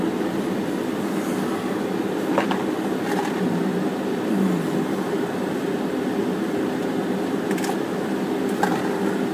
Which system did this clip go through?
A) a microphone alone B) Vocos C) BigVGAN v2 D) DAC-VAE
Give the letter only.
A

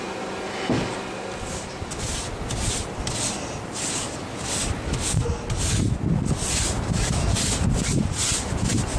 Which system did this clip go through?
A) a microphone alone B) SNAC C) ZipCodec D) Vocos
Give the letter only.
A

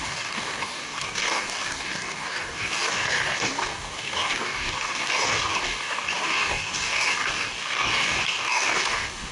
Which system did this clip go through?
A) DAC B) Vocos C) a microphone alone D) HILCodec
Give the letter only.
A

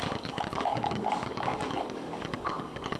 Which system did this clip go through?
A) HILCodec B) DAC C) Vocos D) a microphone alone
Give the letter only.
B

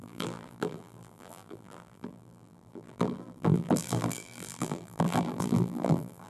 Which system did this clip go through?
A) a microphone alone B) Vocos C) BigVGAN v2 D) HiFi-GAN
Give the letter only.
C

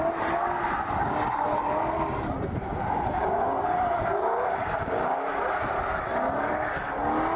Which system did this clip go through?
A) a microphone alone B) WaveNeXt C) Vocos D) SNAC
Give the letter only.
A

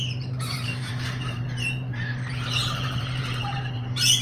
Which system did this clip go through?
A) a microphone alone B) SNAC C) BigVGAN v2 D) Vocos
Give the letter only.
C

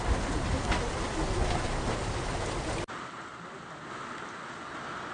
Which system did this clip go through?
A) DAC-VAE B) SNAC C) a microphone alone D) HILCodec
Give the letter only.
C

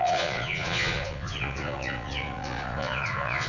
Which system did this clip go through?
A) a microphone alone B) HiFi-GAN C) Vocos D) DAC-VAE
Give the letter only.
C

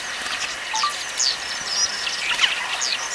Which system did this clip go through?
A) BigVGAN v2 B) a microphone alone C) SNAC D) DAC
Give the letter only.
B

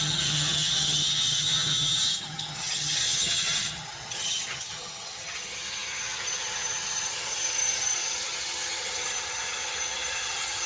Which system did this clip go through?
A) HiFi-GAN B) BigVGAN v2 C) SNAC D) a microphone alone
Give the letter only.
A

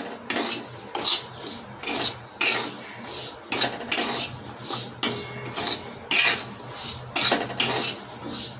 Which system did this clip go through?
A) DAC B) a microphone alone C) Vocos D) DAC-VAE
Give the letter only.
B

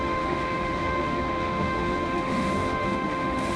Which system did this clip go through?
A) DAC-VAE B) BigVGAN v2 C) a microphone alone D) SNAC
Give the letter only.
A